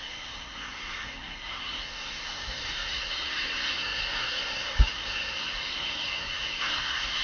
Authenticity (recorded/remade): remade